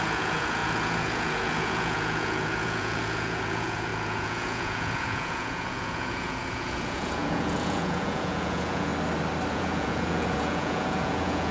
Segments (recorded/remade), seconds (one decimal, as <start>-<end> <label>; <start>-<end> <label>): 0.0-8.9 remade; 8.9-9.5 recorded; 9.5-11.5 remade

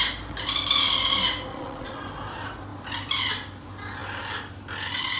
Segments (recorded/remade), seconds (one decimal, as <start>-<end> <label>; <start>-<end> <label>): 0.0-1.5 recorded; 1.5-2.0 remade; 2.0-5.2 recorded

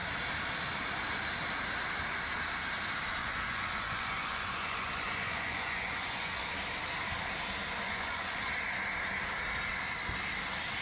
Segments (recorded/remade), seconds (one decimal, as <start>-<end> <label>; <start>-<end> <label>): 0.0-3.2 recorded; 3.2-6.5 remade; 6.5-7.8 recorded; 7.8-8.5 remade; 8.5-10.8 recorded

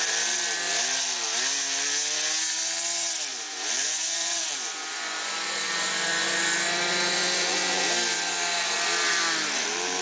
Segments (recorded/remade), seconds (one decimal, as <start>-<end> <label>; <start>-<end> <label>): 0.0-3.3 recorded; 3.3-7.9 remade; 7.9-10.0 recorded